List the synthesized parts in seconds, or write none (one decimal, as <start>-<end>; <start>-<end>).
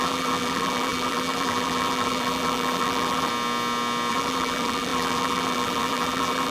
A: 0.0-3.3; 4.1-6.5